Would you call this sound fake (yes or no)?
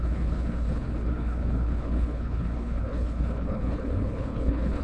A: yes